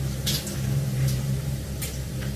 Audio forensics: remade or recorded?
remade